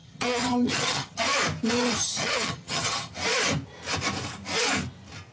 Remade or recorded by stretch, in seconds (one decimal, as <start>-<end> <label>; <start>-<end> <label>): 0.0-1.2 remade; 1.2-2.0 recorded; 2.0-3.1 remade; 3.1-5.3 recorded